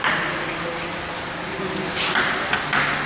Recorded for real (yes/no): yes